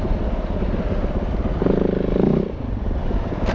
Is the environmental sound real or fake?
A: real